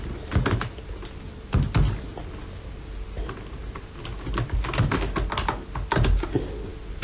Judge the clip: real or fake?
real